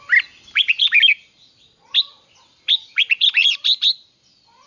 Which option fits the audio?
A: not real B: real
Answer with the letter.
A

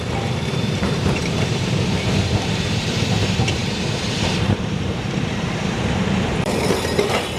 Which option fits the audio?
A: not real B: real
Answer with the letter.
A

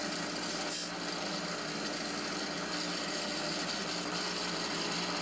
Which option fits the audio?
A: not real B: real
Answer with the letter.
B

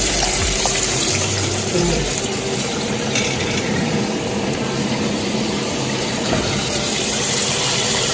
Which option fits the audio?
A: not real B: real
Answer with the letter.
A